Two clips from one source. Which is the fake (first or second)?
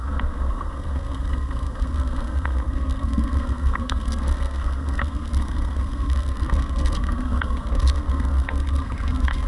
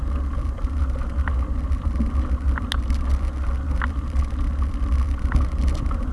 first